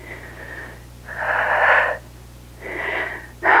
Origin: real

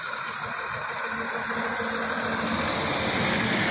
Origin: real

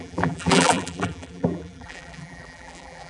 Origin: fake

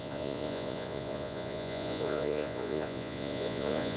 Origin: fake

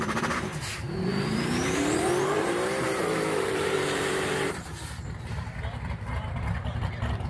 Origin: fake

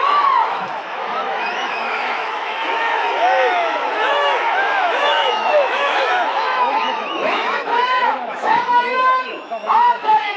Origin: fake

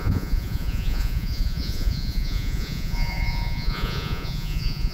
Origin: fake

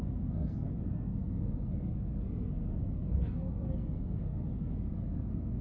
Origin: fake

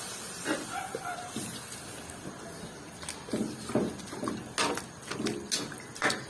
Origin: real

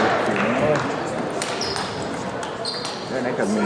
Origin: real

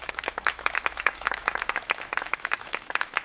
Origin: fake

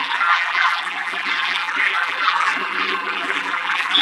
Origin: fake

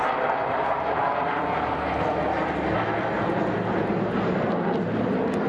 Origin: real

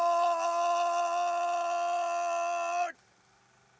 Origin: real